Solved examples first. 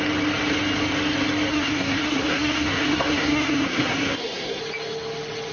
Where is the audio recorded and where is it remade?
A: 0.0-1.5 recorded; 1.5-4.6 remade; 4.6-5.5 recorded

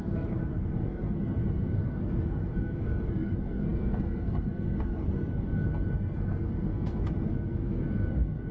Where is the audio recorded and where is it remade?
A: 0.0-8.5 remade

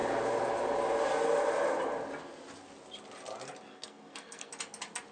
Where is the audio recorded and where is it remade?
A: 0.0-3.7 recorded; 3.7-4.5 remade; 4.5-5.1 recorded

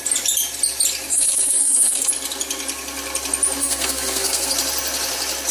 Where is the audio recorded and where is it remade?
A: 0.0-1.1 recorded; 1.1-2.1 remade; 2.1-3.6 recorded; 3.6-4.5 remade; 4.5-5.5 recorded